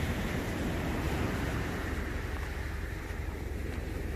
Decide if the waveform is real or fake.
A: fake